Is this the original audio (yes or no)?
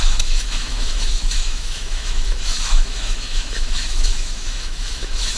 no